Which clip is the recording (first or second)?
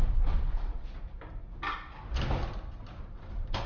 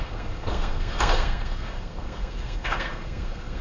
first